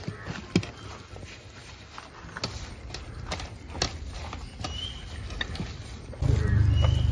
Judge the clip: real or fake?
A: real